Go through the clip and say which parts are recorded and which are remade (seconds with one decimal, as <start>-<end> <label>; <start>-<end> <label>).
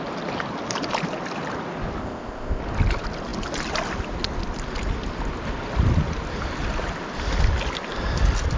0.0-2.0 recorded; 2.0-2.6 remade; 2.6-8.6 recorded